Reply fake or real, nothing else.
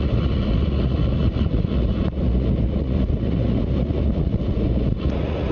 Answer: fake